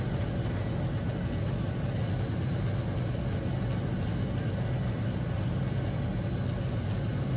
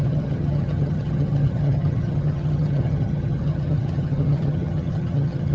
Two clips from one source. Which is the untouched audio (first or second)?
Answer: first